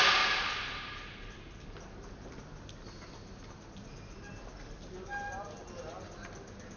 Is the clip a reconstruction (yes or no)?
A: no